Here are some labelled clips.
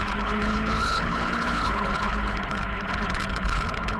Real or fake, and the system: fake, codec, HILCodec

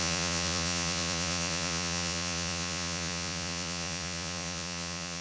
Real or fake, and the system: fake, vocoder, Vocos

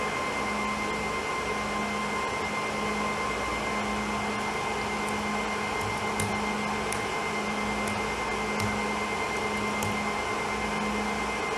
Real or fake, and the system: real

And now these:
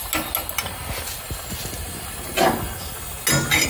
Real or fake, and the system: real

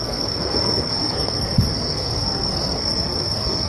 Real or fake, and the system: fake, codec, SNAC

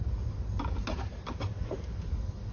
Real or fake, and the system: real